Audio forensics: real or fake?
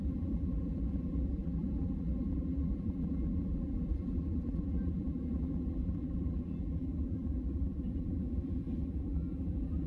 fake